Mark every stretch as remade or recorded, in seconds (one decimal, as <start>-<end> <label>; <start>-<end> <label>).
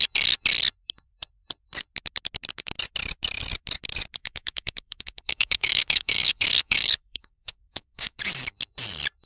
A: 0.0-4.2 recorded; 4.2-8.2 remade; 8.2-9.3 recorded